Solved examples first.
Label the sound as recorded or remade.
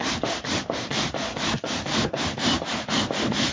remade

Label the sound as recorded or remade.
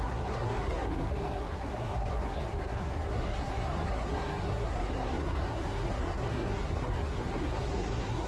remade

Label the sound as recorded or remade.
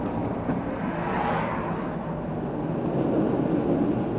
recorded